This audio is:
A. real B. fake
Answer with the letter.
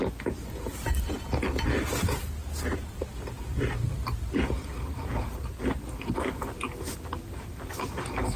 A